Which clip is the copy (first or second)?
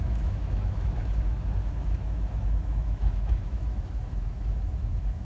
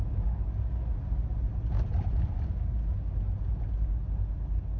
first